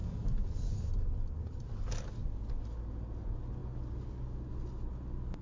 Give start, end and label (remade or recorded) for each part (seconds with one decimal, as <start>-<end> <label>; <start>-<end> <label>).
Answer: 0.0-5.4 recorded